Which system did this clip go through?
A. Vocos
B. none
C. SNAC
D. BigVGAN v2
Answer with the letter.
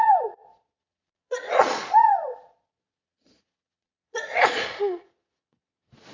A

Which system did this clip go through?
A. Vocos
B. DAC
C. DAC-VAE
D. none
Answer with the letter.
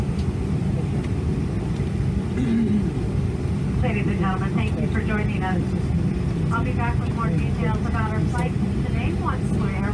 D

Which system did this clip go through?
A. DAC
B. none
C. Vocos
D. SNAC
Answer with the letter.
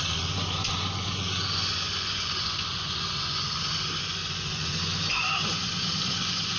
C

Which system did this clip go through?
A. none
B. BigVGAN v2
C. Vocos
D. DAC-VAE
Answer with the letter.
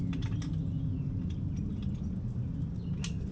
A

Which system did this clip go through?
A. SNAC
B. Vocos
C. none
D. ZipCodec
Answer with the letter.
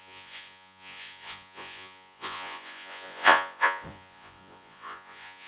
B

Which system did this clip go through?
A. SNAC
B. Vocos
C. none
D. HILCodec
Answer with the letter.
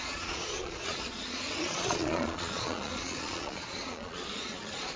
B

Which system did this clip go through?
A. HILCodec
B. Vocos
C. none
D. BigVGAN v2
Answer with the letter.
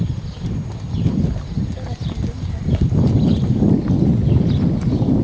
C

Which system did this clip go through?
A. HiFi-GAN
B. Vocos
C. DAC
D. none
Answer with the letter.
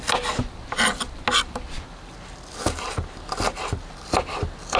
D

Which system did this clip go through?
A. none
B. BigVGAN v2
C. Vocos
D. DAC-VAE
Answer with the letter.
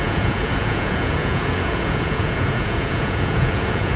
C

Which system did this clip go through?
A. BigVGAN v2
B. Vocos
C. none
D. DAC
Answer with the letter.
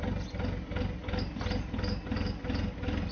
C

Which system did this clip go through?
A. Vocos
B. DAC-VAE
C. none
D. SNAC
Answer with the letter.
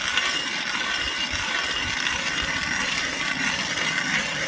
C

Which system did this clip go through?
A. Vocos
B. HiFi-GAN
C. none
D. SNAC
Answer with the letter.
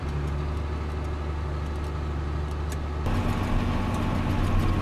C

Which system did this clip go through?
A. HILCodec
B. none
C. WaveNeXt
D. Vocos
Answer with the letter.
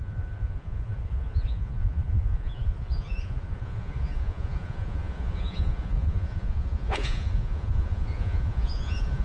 D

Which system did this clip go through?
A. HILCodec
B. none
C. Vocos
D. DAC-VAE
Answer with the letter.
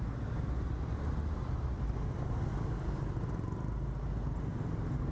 B